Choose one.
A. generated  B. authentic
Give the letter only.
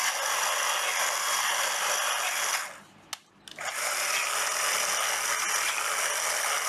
B